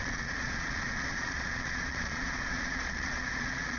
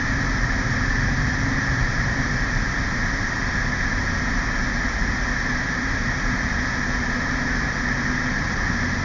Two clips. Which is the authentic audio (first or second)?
second